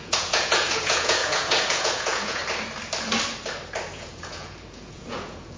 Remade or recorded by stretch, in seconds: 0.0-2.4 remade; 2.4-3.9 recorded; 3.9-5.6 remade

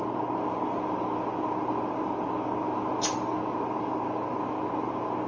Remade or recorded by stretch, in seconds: 0.0-5.3 recorded